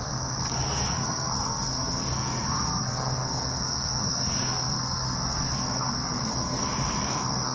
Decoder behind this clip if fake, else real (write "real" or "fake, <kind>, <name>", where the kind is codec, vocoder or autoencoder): fake, codec, SNAC